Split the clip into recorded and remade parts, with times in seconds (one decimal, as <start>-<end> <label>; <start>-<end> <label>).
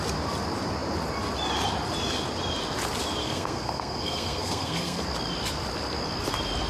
0.0-3.2 recorded; 3.2-5.0 remade; 5.0-6.7 recorded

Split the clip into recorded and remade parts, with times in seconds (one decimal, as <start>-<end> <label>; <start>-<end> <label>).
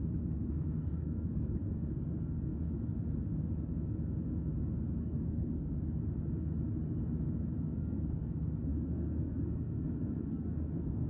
0.0-2.5 remade; 2.5-5.0 recorded; 5.0-6.0 remade; 6.0-7.6 recorded; 7.6-11.1 remade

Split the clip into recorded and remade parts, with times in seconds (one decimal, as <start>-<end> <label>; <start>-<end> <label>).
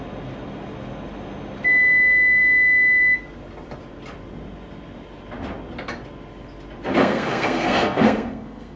0.0-7.0 recorded; 7.0-8.8 remade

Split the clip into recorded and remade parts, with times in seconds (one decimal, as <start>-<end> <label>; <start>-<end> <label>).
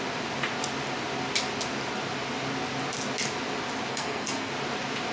0.0-3.9 recorded; 3.9-4.5 remade; 4.5-5.1 recorded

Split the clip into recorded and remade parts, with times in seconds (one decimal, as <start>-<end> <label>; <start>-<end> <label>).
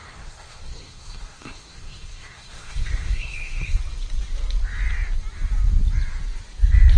0.0-3.8 remade; 3.8-7.0 recorded